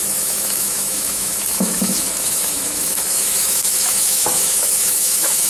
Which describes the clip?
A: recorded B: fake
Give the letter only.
B